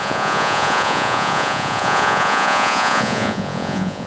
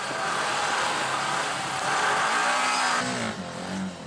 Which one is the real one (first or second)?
second